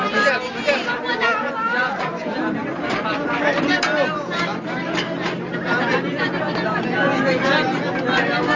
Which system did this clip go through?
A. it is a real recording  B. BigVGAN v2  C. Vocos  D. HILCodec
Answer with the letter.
A